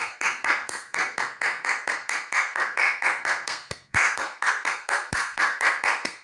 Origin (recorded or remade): remade